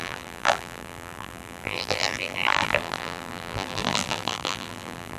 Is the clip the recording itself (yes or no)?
no